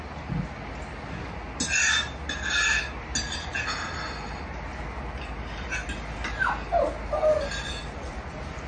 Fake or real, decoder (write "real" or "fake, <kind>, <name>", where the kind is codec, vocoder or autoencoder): real